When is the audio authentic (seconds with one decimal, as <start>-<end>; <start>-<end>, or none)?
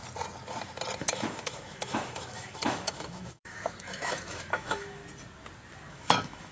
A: 0.0-1.0; 5.0-5.9